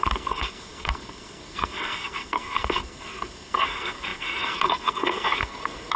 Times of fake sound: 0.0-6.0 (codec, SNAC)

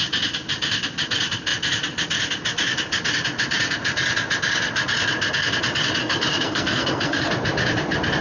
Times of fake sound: 6.0-7.3 (codec, SNAC)

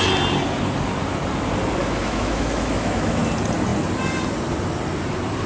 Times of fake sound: 1.8-3.2 (autoencoder, DAC-VAE)

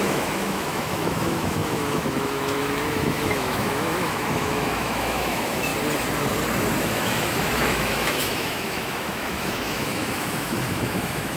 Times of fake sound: 0.0-5.7 (autoencoder, DAC-VAE); 6.8-11.4